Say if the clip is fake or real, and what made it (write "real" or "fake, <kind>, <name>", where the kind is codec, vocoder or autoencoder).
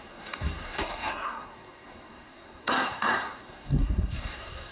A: fake, codec, SNAC